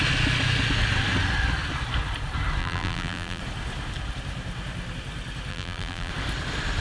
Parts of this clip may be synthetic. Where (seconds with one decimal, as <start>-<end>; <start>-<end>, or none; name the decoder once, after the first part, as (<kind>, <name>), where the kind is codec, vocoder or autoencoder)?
2.6-3.4 (vocoder, BigVGAN v2); 5.5-6.1